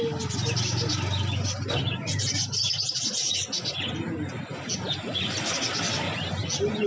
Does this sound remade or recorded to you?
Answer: recorded